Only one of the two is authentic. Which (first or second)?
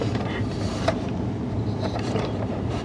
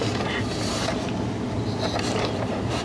second